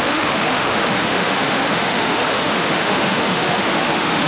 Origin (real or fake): fake